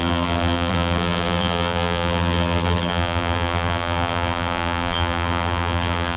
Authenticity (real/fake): fake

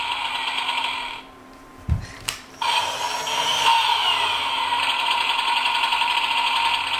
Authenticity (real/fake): fake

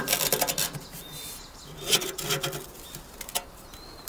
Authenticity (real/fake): real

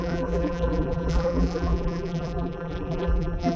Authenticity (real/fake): fake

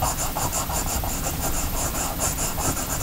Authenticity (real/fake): fake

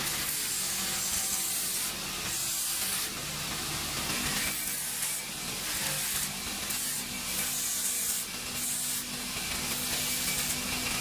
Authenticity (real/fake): real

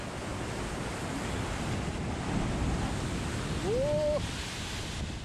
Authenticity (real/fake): real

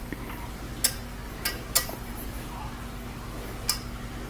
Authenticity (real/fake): real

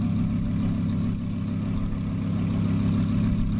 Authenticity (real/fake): real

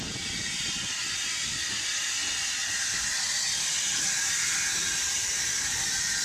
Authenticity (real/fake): real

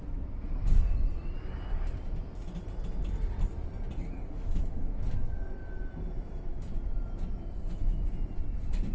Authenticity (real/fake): real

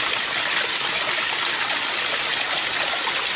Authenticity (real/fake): real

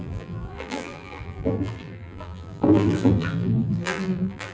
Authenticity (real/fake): fake